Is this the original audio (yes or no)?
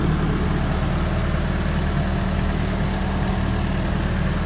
yes